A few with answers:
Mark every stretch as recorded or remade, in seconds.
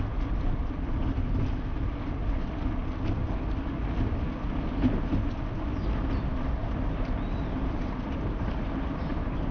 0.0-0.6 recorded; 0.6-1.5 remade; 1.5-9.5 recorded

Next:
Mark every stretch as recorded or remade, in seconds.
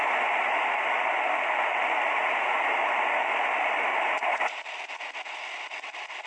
0.0-3.9 recorded; 3.9-4.6 remade; 4.6-6.3 recorded